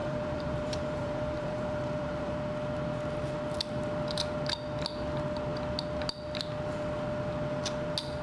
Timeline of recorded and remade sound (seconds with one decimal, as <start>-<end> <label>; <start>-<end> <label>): 0.0-2.3 remade; 2.3-8.2 recorded